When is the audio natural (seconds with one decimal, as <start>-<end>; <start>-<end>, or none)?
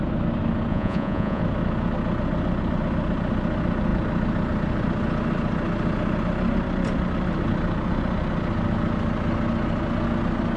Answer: 0.0-0.7; 1.4-10.6